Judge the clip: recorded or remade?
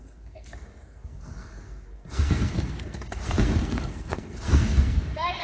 remade